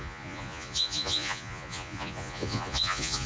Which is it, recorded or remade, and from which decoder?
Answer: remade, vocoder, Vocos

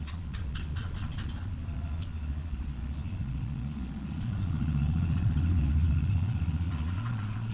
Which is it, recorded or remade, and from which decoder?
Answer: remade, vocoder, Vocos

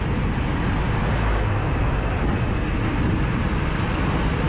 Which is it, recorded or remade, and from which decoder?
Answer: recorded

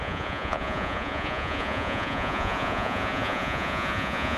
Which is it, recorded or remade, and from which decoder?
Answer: remade, vocoder, Vocos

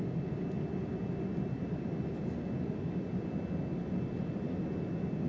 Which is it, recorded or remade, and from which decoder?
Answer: recorded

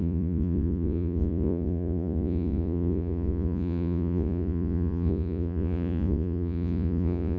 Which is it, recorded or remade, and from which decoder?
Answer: remade, vocoder, Vocos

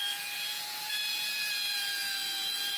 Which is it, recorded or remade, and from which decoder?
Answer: remade, vocoder, Vocos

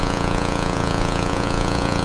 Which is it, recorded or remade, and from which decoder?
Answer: remade, vocoder, Vocos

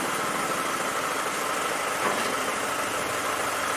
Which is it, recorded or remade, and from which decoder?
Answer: recorded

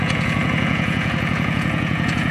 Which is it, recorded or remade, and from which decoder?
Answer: remade, vocoder, Vocos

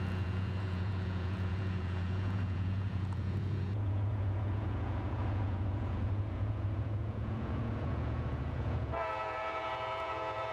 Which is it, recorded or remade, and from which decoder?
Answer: remade, vocoder, Vocos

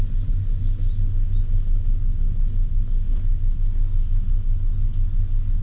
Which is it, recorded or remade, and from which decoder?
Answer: recorded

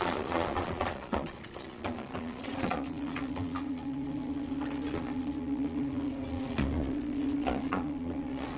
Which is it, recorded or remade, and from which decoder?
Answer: remade, vocoder, Vocos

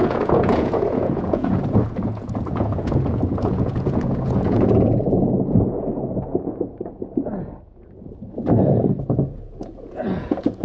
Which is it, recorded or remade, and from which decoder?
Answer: remade, vocoder, Vocos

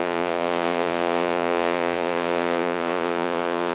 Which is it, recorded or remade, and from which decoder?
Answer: remade, vocoder, Vocos